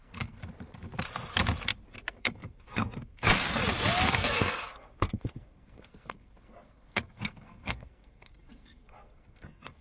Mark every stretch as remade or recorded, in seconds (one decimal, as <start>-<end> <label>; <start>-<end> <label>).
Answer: 0.0-0.4 remade; 0.4-2.1 recorded; 2.1-3.6 remade; 3.6-4.1 recorded; 4.1-9.8 remade